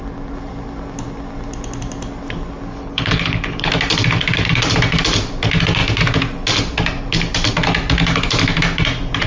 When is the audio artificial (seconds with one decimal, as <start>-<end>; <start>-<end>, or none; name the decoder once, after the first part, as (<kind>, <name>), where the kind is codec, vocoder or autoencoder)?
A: 2.7-3.7 (codec, HILCodec)